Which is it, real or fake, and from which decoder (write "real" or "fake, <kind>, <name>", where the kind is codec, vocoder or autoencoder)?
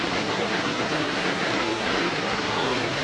fake, codec, SNAC